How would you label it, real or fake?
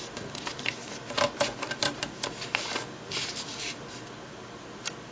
real